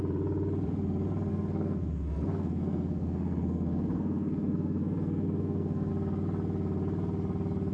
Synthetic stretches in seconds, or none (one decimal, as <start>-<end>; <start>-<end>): 1.3-5.9